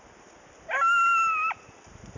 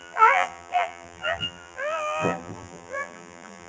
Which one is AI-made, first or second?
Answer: second